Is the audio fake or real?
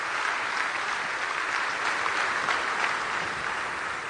real